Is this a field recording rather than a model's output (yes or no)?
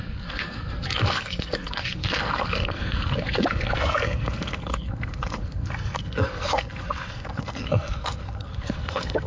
no